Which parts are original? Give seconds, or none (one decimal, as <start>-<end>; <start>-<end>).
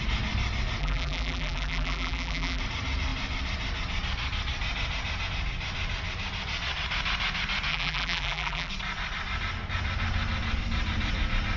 0.0-0.8; 2.6-7.7; 8.7-11.6